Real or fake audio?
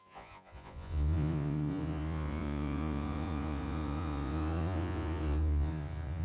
fake